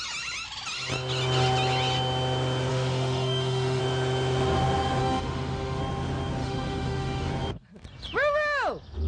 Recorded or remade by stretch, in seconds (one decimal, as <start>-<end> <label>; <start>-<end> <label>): 0.0-2.7 recorded; 2.7-3.8 remade; 3.8-5.0 recorded; 5.0-5.8 remade; 5.8-6.4 recorded; 6.4-7.3 remade; 7.3-9.1 recorded